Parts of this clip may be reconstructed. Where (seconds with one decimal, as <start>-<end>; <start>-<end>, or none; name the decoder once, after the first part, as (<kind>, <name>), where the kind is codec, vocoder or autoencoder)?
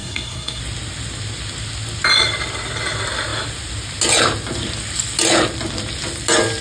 0.0-0.6 (codec, SNAC)